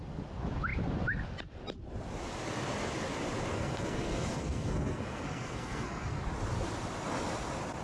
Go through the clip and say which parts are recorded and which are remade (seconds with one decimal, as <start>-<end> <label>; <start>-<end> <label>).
0.0-3.5 recorded; 3.5-6.2 remade; 6.2-7.8 recorded